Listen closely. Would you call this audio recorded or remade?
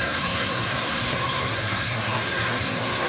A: remade